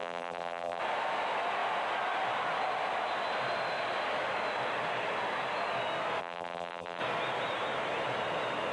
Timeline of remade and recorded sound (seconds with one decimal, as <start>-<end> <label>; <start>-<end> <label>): 0.0-0.8 remade; 0.8-6.2 recorded; 6.2-7.0 remade; 7.0-8.7 recorded